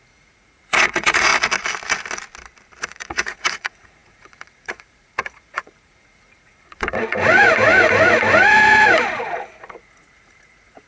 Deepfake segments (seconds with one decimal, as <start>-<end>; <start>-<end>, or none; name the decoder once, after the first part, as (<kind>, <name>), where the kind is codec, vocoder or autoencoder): 0.0-1.3 (vocoder, Vocos); 2.8-10.9